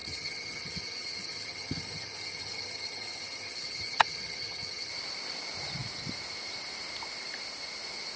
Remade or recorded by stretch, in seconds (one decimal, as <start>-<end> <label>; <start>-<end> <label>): 0.0-4.9 remade; 4.9-8.2 recorded